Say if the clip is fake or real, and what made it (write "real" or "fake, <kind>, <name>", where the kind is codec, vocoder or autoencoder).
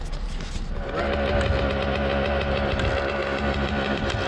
real